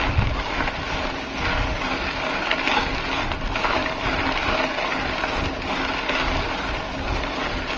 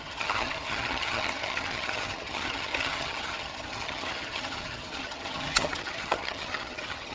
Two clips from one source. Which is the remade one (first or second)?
second